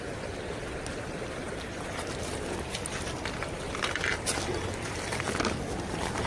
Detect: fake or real real